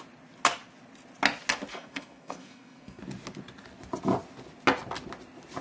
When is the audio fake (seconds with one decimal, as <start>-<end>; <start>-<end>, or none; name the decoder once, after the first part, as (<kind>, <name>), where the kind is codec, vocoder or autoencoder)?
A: 1.7-3.0 (codec, SNAC)